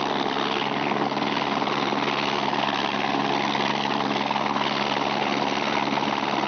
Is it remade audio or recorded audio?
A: recorded